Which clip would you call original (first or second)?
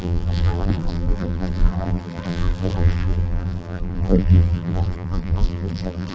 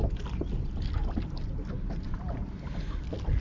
second